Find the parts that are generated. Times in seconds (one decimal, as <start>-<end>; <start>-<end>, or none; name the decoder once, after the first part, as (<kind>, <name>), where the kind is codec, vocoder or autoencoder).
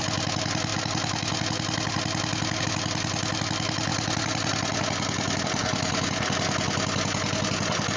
none